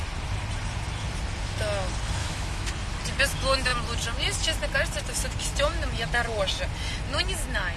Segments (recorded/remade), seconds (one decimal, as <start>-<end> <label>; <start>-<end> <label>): 0.0-2.2 recorded; 2.2-2.7 remade; 2.7-7.8 recorded